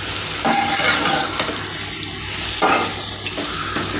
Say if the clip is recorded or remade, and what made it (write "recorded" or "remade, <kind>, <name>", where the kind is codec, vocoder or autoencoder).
recorded